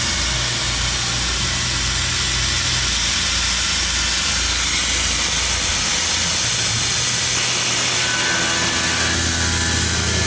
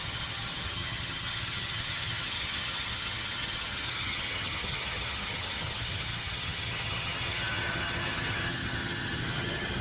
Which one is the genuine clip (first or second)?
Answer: first